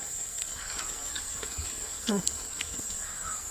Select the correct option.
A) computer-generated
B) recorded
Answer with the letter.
A